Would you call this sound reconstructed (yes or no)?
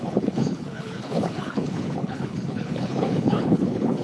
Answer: yes